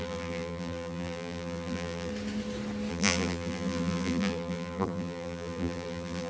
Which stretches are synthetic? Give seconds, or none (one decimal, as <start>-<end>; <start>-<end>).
0.0-2.1; 2.9-6.3